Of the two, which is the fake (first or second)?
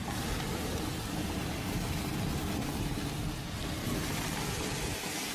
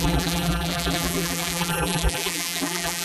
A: second